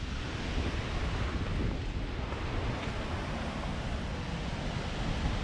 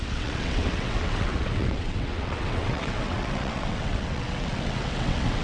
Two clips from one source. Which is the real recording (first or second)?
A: first